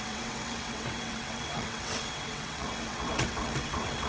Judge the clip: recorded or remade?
remade